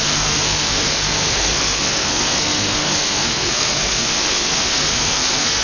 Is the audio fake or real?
fake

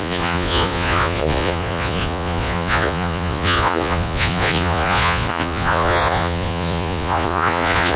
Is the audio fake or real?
fake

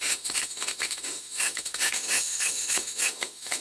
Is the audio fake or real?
fake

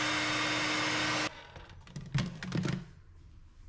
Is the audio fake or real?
real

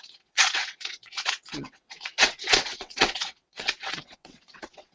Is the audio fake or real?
fake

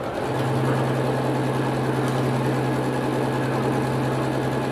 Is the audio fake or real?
real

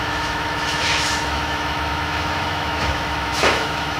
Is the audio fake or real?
fake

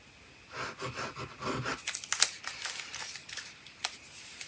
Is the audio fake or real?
real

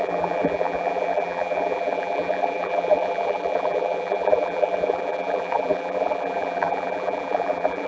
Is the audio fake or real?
fake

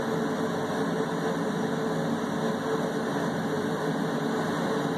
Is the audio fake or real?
real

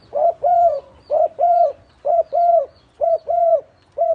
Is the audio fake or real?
fake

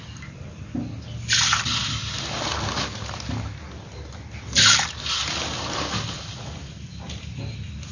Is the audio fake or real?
real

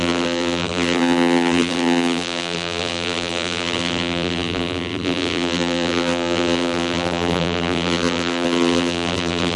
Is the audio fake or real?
fake